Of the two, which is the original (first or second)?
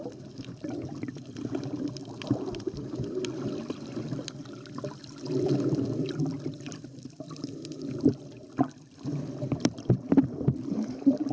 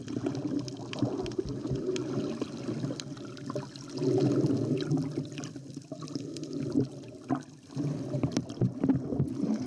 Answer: second